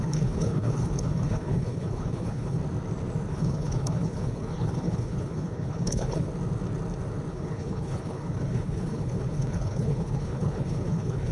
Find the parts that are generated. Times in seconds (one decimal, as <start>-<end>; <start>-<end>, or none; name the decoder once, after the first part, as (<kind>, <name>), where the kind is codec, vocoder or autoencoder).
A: 0.0-2.6 (codec, HILCodec); 3.3-6.3; 7.3-11.3